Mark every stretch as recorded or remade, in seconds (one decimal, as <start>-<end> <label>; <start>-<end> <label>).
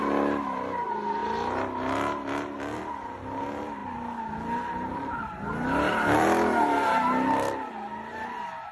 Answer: 0.0-8.7 recorded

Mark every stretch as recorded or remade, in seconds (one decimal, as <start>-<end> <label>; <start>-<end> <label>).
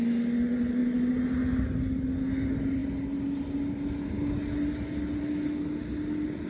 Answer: 0.0-6.5 recorded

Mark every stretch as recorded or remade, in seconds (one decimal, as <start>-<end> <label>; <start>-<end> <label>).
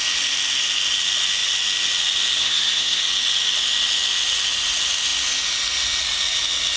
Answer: 0.0-2.4 recorded; 2.4-3.0 remade; 3.0-6.8 recorded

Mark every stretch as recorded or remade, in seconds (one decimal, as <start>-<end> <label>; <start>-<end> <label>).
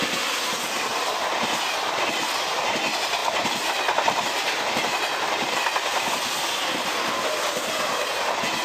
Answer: 0.0-8.6 recorded